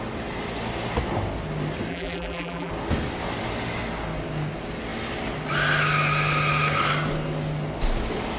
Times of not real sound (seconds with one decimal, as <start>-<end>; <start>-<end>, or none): 1.9-2.7